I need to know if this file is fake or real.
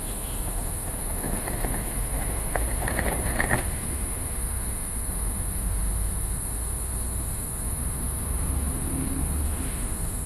fake